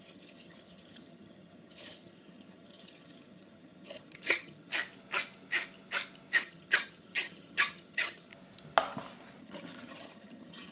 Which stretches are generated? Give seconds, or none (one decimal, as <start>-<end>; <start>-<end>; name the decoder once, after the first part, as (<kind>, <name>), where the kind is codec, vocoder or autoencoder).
0.0-4.7 (vocoder, HiFi-GAN); 6.4-8.3; 9.4-10.7